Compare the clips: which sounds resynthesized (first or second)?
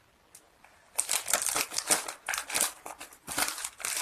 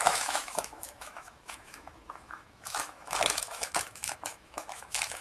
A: second